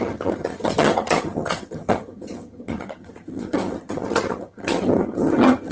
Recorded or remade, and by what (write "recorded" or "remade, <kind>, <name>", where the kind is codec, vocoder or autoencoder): remade, vocoder, HiFi-GAN